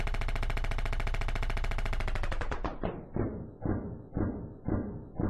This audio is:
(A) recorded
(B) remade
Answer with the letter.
A